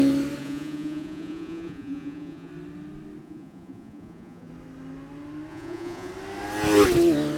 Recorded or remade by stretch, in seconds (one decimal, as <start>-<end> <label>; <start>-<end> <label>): 0.0-0.4 recorded; 0.4-2.5 remade; 2.5-3.2 recorded; 3.2-4.5 remade; 4.5-5.5 recorded; 5.5-6.1 remade; 6.1-7.4 recorded